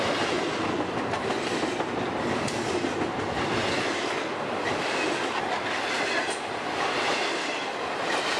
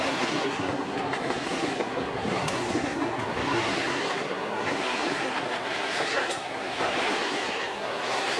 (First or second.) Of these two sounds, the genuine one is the first